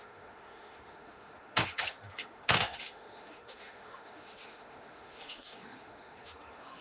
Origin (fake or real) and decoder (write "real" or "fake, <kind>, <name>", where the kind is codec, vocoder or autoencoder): fake, autoencoder, DAC-VAE